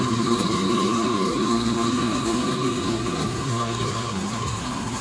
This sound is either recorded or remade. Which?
remade